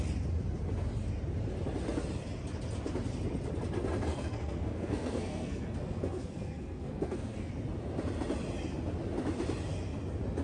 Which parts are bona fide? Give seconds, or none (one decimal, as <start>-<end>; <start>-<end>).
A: 0.0-4.1; 7.5-10.4

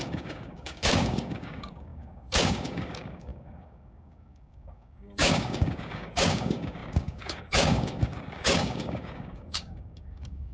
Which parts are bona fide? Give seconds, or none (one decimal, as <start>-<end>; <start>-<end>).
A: none